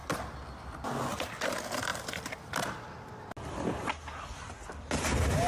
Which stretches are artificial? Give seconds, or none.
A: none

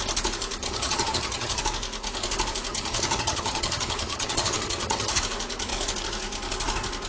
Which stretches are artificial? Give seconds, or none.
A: 0.6-1.6; 2.7-5.2

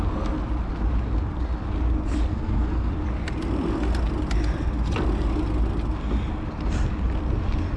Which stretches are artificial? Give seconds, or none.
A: 2.3-2.9

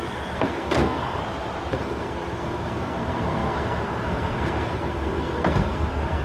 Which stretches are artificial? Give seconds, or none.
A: 0.0-1.2; 1.7-6.2